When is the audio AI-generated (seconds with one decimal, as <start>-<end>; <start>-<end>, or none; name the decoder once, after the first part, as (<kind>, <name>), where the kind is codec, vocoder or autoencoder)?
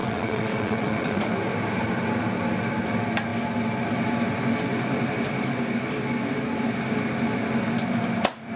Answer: 0.0-1.2 (vocoder, WaveNeXt)